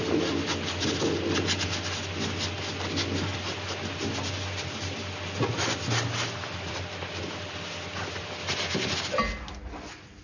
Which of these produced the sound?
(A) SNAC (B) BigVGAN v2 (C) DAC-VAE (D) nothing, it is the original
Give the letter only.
D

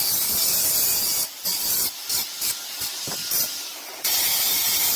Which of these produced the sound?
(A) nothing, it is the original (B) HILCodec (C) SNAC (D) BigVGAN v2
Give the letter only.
D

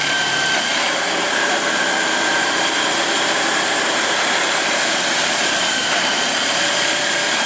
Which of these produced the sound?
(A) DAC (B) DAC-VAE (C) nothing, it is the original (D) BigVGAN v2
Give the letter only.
D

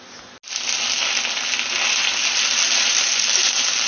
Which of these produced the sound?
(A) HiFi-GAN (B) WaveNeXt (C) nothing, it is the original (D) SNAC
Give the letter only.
C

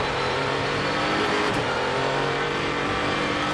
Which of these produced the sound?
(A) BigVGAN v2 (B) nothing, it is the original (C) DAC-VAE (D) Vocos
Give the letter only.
A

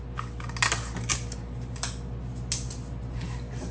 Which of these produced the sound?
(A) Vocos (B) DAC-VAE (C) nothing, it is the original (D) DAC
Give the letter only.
C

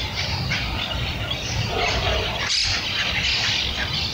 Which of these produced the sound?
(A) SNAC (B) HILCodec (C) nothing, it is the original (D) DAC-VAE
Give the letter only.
C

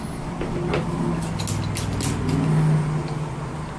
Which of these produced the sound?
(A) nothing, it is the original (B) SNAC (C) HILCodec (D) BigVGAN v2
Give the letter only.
A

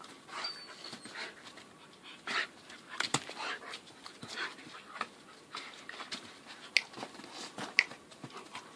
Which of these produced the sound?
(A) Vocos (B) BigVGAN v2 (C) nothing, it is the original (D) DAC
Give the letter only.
C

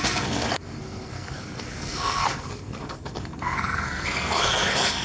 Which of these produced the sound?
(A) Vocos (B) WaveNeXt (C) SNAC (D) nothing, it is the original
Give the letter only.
C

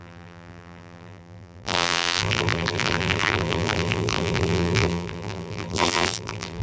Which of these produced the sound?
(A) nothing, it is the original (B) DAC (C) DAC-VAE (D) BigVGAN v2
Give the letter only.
D